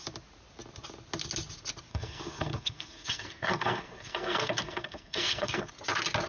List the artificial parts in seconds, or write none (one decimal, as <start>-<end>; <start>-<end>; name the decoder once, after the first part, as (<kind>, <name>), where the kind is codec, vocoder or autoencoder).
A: 1.9-5.7 (codec, SNAC)